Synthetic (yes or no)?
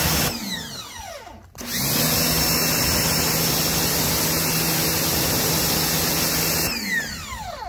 no